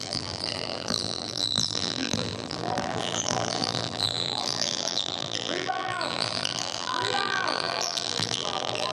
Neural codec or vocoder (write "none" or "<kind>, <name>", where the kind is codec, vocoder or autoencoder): vocoder, BigVGAN v2